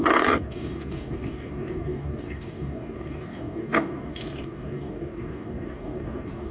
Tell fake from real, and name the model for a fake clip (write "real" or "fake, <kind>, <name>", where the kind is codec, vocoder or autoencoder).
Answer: fake, codec, DAC